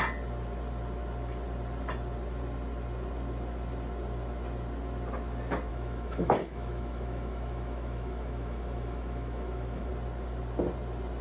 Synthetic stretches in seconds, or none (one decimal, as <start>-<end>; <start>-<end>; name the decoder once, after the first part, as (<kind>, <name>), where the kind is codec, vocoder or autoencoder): 5.7-9.9 (autoencoder, DAC-VAE)